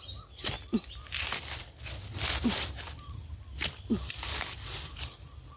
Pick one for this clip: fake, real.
real